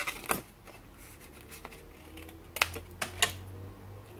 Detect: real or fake real